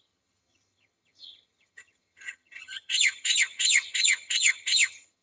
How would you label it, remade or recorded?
remade